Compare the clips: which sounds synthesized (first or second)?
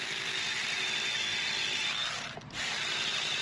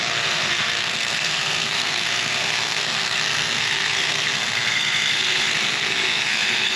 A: second